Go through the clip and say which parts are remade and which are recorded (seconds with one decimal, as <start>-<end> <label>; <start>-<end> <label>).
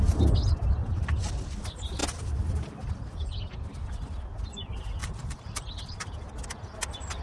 0.0-0.8 recorded; 0.8-1.3 remade; 1.3-5.0 recorded; 5.0-6.1 remade; 6.1-7.2 recorded